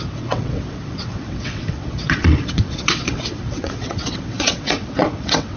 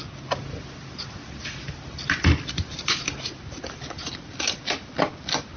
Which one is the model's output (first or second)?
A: first